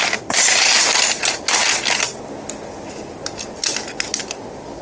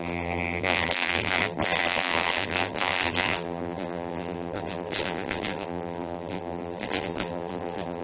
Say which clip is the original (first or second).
first